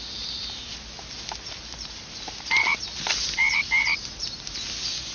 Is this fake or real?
real